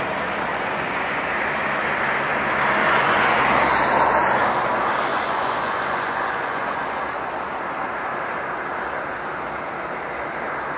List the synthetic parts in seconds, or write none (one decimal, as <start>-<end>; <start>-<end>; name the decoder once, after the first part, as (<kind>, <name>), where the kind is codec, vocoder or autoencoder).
0.5-1.2 (vocoder, Vocos); 2.8-3.4; 5.1-7.3